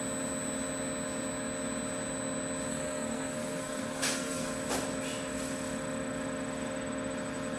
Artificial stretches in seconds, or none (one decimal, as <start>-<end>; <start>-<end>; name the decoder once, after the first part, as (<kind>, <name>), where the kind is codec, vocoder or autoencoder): 2.7-4.5 (codec, SNAC)